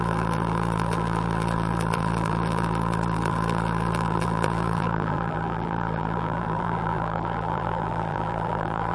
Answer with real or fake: fake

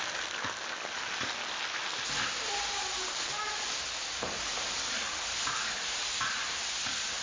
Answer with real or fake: real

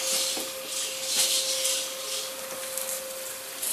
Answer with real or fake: real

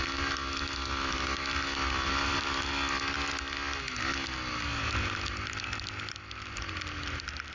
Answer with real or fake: real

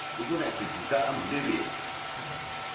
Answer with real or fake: real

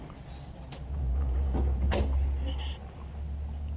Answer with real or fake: real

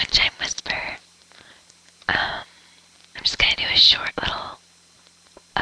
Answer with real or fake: real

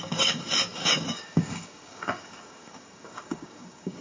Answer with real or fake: fake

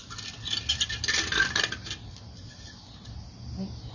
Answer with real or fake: real